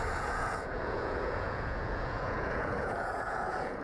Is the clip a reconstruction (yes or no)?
yes